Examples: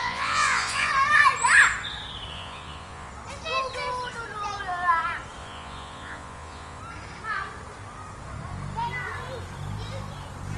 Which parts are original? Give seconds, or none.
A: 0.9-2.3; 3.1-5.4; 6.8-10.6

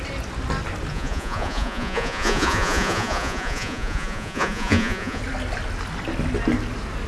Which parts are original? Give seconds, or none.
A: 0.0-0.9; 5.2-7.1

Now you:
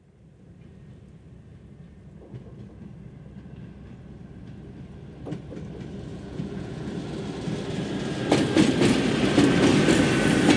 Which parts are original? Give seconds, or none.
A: 0.0-6.1; 6.9-10.6

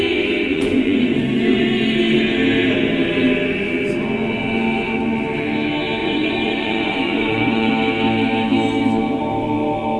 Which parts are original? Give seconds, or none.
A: 0.0-0.5; 1.8-6.0; 7.7-10.0

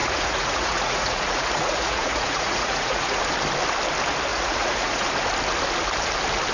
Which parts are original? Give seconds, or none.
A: 3.2-4.3; 5.1-6.5

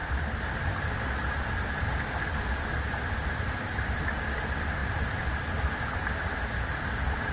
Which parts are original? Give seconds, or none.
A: 0.0-7.3

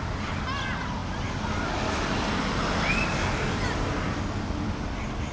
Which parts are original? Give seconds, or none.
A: 0.0-5.3

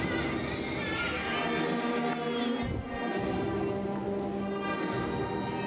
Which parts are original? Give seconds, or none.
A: 0.0-5.7